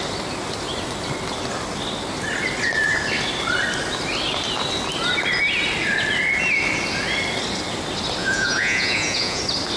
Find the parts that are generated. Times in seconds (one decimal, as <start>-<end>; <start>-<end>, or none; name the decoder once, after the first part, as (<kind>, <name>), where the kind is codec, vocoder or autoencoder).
8.2-9.4 (vocoder, Vocos)